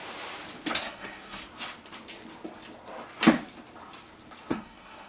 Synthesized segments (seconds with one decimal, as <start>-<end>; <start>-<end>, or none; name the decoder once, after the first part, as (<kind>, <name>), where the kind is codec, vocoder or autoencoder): 0.8-1.4 (codec, SNAC); 4.5-5.1